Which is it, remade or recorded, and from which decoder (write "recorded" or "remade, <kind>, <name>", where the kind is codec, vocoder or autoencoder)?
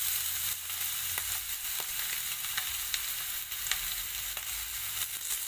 recorded